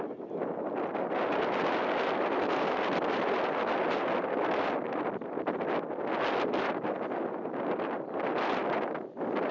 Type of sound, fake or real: real